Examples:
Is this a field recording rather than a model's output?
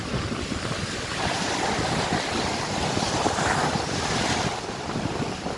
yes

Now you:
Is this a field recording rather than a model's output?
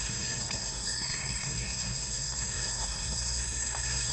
no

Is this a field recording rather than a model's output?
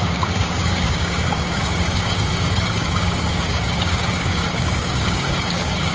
no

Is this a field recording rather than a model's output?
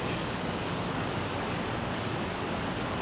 no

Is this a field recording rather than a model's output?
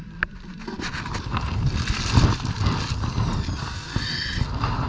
yes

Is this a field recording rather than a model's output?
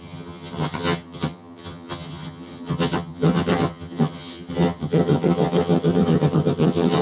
no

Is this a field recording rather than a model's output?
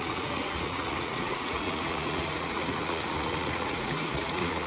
no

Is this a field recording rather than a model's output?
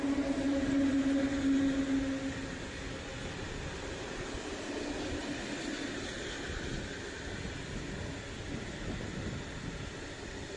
yes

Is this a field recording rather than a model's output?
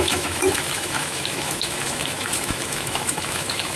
no